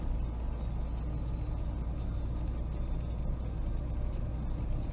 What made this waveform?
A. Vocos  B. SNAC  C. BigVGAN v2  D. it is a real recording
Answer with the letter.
D